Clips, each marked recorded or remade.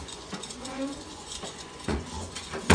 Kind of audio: remade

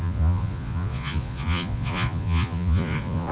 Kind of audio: remade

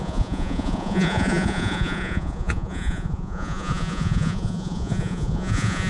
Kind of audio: remade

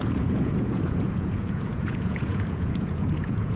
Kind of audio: remade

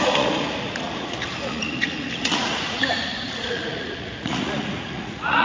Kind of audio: remade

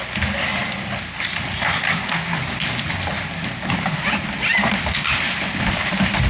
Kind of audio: recorded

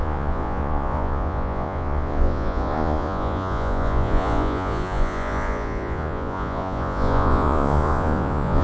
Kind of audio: remade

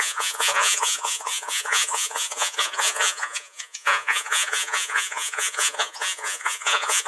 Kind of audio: remade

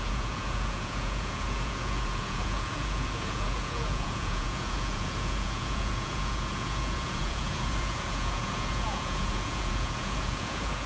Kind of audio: remade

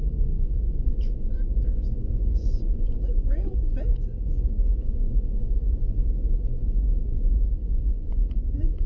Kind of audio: remade